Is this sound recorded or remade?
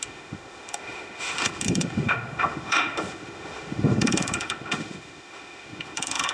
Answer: remade